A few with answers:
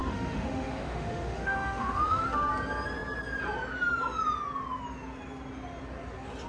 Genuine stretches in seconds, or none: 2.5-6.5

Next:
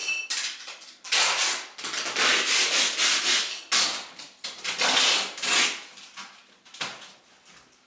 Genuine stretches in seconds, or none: 0.0-7.9

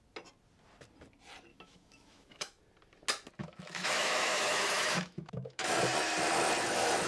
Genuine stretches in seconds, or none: 0.0-1.5; 2.6-3.4; 5.8-7.1

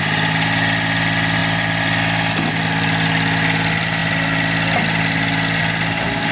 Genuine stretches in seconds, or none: 0.0-6.3

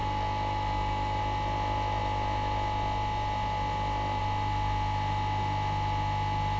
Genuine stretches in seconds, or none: 1.2-6.6

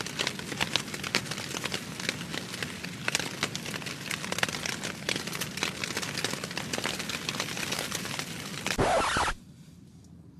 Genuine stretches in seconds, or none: 0.0-10.4